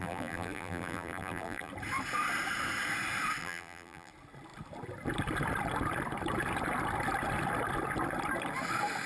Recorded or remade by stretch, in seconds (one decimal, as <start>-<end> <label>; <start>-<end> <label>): 0.0-1.7 remade; 1.7-3.4 recorded; 3.4-4.1 remade; 4.1-9.1 recorded